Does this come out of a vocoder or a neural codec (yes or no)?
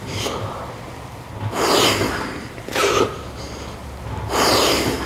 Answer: yes